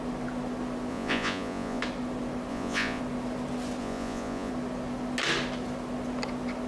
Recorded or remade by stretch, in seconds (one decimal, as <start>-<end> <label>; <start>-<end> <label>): 0.0-0.9 recorded; 0.9-1.8 remade; 1.8-2.5 recorded; 2.5-3.0 remade; 3.0-3.8 recorded; 3.8-4.5 remade; 4.5-6.7 recorded